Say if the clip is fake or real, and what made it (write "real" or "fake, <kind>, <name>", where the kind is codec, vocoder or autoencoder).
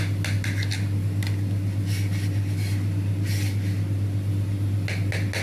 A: real